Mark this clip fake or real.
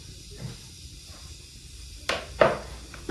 real